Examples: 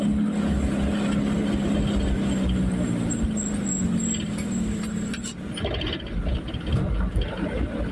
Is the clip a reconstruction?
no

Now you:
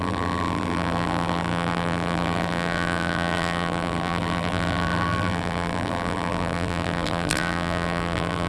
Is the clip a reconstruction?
yes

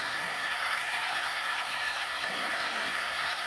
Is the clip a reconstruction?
yes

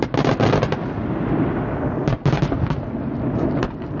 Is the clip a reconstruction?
no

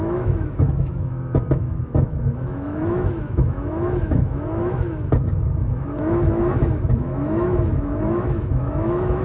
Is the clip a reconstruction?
yes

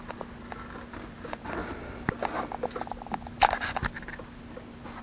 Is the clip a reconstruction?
no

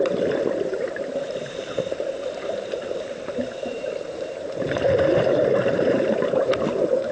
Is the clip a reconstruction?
yes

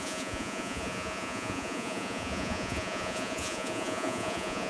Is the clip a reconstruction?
yes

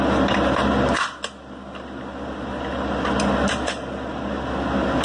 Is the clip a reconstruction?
no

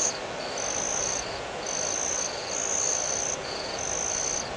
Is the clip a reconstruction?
no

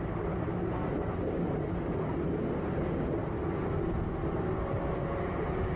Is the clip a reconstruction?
no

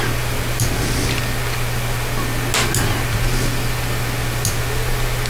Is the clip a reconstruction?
no